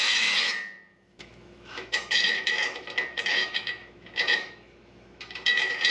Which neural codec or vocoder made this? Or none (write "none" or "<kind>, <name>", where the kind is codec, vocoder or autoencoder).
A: autoencoder, DAC-VAE